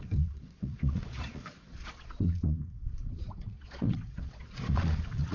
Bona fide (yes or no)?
no